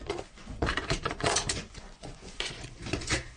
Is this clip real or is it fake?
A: fake